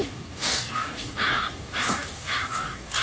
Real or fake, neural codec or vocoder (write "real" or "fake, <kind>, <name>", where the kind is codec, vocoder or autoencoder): fake, codec, DAC